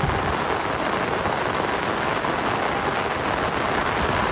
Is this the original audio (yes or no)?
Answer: yes